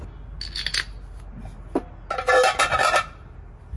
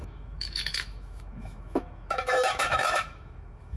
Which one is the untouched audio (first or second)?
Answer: first